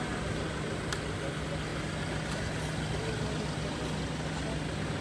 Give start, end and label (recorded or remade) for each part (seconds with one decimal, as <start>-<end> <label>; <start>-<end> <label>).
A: 0.0-5.0 recorded

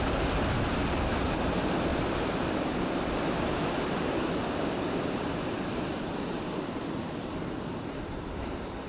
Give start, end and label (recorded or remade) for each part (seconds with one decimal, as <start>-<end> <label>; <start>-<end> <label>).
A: 0.0-1.9 recorded; 1.9-4.8 remade; 4.8-5.9 recorded; 5.9-8.9 remade

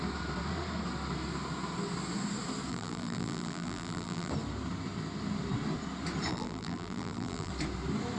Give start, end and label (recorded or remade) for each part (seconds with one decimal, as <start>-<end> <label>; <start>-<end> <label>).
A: 0.0-2.7 recorded; 2.7-4.3 remade; 4.3-6.3 recorded; 6.3-7.5 remade; 7.5-8.2 recorded

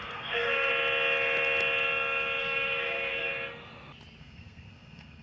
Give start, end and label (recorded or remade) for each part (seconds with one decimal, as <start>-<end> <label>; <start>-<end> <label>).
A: 0.0-0.7 remade; 0.7-2.4 recorded; 2.4-3.3 remade; 3.3-4.2 recorded; 4.2-5.2 remade

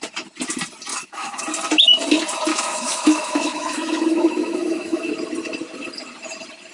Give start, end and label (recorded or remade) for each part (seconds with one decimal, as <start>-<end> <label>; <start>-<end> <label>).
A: 0.0-0.9 recorded; 0.9-1.4 remade; 1.4-2.5 recorded; 2.5-5.1 remade; 5.1-6.7 recorded

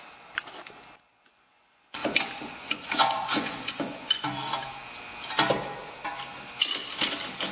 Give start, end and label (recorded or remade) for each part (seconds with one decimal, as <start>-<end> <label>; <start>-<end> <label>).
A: 0.0-1.1 recorded; 1.1-4.2 remade; 4.2-7.5 recorded